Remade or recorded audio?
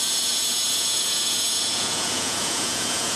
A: remade